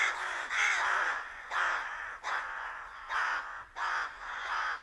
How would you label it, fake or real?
fake